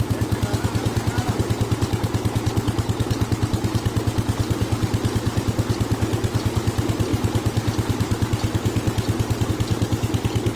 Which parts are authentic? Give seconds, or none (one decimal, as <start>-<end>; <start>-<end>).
0.0-10.6